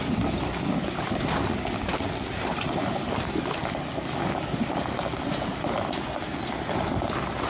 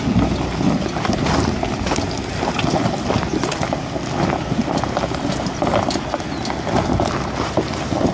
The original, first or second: second